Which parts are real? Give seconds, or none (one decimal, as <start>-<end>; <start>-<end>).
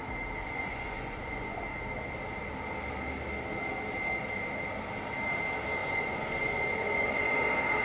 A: 0.0-0.4; 1.6-5.8; 7.3-7.8